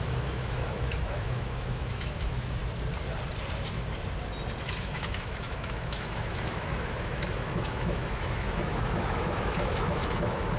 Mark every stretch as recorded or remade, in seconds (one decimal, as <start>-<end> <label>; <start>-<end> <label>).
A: 0.0-2.6 remade; 2.6-4.6 recorded; 4.6-10.6 remade